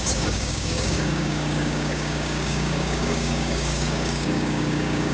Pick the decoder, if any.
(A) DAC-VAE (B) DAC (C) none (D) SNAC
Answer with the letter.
B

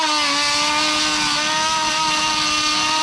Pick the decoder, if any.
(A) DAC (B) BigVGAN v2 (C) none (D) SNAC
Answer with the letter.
C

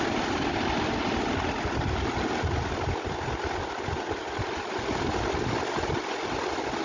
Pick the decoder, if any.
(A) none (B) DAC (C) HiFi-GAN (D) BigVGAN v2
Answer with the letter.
A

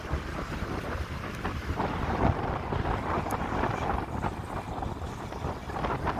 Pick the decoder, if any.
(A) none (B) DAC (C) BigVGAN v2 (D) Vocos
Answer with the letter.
A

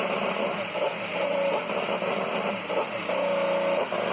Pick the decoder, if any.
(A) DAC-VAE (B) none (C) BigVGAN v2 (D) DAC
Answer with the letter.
B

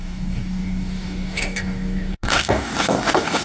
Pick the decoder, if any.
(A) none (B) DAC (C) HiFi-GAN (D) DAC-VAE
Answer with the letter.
B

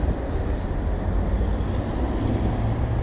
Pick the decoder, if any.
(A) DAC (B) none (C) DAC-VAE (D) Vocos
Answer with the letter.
B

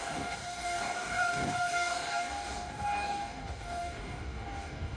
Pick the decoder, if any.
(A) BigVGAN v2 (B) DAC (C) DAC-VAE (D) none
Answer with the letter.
B